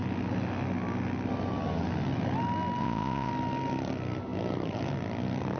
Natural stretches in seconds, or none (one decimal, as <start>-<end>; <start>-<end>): 0.0-2.8; 3.3-5.6